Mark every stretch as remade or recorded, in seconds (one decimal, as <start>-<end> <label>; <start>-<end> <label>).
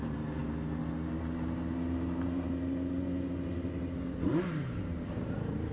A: 0.0-5.7 recorded